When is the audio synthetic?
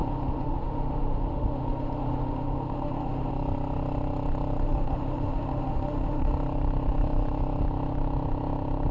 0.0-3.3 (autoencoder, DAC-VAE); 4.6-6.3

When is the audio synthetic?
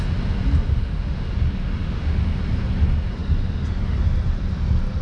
0.7-1.3 (autoencoder, DAC-VAE); 1.8-2.4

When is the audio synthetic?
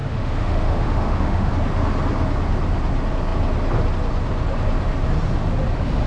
0.0-1.5 (autoencoder, DAC-VAE)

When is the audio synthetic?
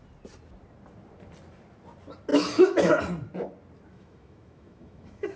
2.3-2.9 (autoencoder, DAC-VAE); 3.9-5.4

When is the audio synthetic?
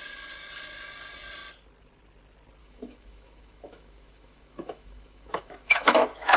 2.6-6.4 (autoencoder, DAC-VAE)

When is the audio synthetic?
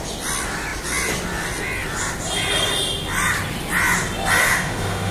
4.4-5.1 (autoencoder, DAC-VAE)